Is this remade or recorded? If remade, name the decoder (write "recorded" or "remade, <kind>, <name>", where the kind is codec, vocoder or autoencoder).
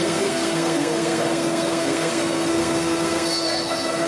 remade, codec, SNAC